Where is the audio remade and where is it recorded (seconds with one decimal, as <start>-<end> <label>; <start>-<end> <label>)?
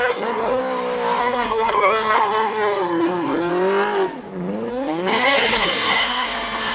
0.0-0.6 remade; 0.6-1.2 recorded; 1.2-3.5 remade; 3.5-4.7 recorded; 4.7-6.7 remade